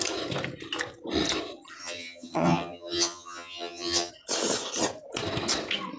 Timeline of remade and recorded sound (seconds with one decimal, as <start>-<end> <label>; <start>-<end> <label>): 0.0-1.8 recorded; 1.8-4.1 remade; 4.1-6.0 recorded